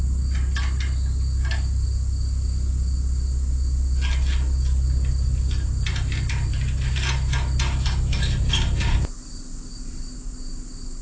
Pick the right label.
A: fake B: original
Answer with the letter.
B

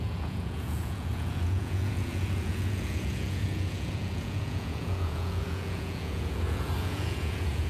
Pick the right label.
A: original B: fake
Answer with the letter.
B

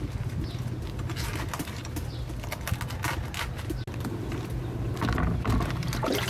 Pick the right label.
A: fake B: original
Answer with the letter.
B